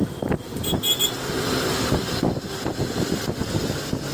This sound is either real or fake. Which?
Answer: real